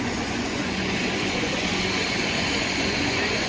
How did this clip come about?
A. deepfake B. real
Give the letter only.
A